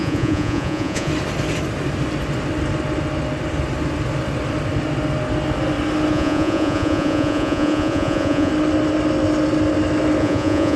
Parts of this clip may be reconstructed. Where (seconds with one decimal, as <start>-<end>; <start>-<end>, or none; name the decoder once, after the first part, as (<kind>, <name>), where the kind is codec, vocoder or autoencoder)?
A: 0.0-1.1 (vocoder, Vocos); 6.1-8.5; 10.2-10.8